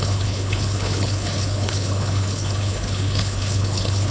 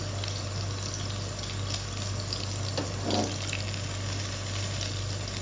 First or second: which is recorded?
second